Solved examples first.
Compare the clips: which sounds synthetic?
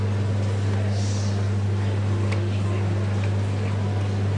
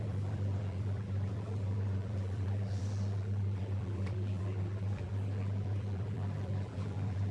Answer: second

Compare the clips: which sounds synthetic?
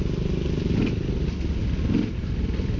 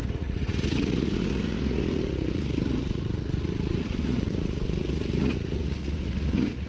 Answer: second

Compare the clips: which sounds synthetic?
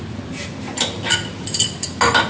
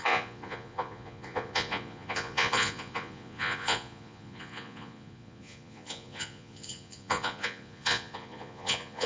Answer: second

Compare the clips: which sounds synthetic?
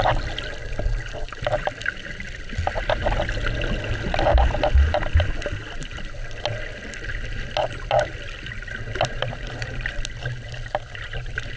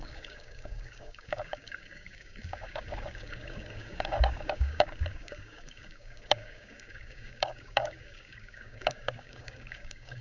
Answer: second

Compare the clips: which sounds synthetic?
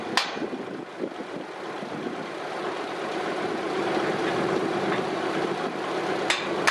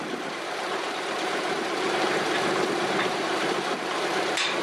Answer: second